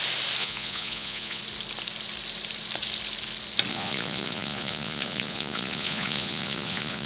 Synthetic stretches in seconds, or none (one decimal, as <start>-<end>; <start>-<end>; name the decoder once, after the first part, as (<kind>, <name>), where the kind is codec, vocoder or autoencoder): 0.4-1.4 (vocoder, Vocos); 3.7-7.1